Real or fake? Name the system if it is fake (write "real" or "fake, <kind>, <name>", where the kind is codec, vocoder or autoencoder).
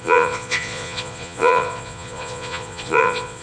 fake, vocoder, Vocos